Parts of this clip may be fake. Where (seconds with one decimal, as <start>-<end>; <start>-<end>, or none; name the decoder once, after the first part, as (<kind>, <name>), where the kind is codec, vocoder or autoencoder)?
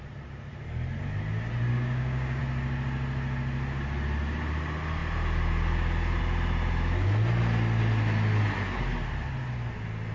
1.7-2.4 (codec, DAC)